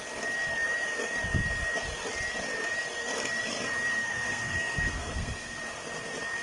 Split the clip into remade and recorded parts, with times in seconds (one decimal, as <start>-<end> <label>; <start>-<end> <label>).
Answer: 0.0-3.9 recorded; 3.9-5.6 remade; 5.6-6.4 recorded